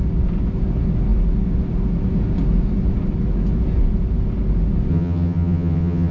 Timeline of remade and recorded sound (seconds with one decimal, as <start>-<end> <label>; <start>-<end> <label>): 0.0-4.9 recorded; 4.9-6.1 remade